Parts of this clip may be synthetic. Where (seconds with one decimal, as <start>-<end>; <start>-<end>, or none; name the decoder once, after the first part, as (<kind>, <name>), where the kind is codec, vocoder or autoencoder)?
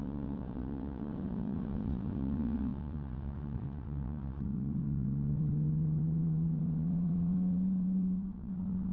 0.0-8.9 (vocoder, WaveNeXt)